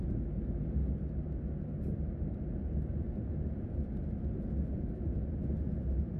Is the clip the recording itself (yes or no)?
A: yes